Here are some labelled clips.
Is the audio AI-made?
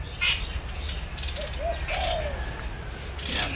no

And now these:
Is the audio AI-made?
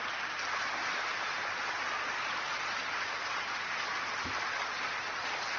no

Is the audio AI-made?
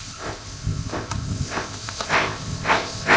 yes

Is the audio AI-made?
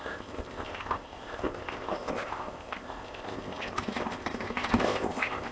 yes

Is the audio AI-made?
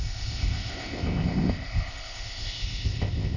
yes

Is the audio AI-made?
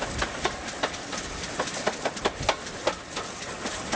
no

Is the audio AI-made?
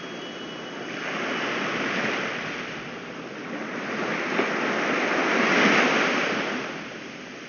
no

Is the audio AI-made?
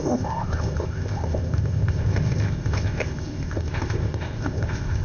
yes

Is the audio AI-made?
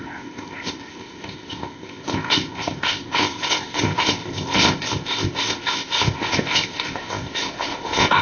yes